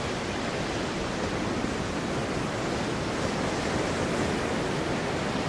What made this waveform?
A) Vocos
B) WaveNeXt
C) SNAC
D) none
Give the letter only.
D